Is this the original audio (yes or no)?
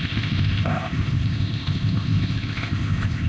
no